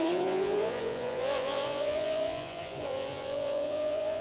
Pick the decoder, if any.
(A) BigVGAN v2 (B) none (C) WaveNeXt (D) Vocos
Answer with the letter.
D